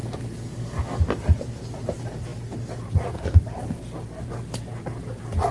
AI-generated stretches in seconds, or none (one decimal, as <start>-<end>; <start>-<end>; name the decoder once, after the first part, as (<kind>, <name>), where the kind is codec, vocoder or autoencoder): 0.0-1.0 (codec, DAC)